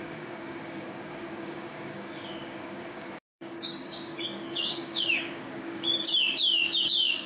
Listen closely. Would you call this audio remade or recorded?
remade